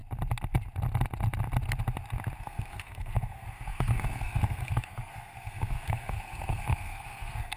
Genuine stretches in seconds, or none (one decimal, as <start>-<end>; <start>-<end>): 0.0-2.4

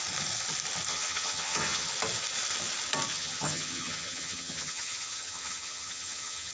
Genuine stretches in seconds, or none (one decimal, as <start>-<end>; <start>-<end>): 0.0-0.9; 1.9-3.1

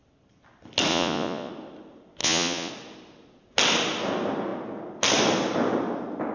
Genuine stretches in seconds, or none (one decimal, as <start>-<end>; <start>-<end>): 0.0-0.9; 1.5-2.2; 2.7-6.3

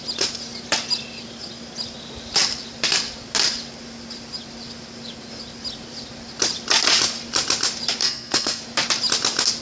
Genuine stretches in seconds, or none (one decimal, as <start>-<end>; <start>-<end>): 0.0-8.0; 8.6-9.6

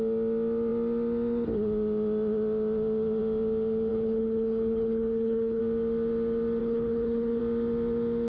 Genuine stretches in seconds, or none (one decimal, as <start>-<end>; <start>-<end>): 0.0-3.9; 5.6-6.6; 7.4-8.3

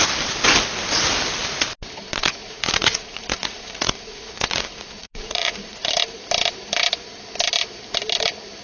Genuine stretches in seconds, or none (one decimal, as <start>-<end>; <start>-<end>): 0.0-2.4; 5.9-8.6

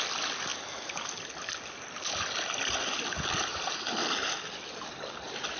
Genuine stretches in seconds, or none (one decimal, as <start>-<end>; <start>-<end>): 0.0-5.6